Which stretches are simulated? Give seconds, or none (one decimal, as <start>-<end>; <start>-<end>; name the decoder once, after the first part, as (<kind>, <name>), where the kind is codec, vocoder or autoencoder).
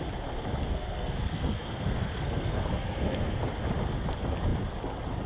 0.6-3.5 (codec, SNAC)